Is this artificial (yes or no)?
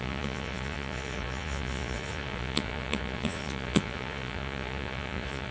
yes